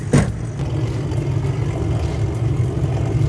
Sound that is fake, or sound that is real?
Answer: real